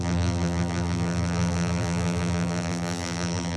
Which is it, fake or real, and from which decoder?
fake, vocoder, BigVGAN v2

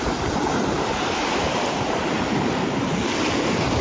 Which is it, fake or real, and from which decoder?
fake, vocoder, BigVGAN v2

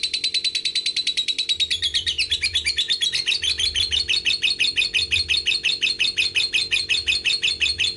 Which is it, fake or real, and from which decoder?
real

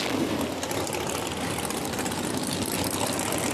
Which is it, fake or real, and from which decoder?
real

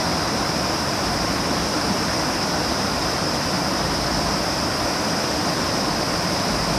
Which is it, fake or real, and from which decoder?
fake, vocoder, BigVGAN v2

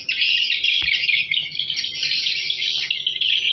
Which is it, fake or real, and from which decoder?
real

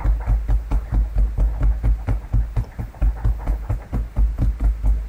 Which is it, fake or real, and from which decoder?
real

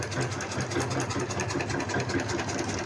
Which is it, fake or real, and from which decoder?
real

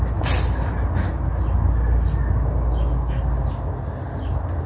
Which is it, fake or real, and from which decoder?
real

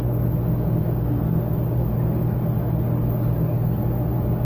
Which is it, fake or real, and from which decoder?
real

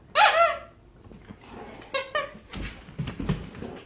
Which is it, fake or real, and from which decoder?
real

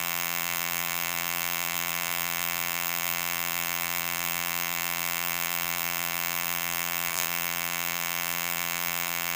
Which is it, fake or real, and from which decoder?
fake, vocoder, BigVGAN v2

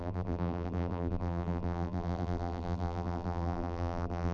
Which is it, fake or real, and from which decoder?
fake, vocoder, BigVGAN v2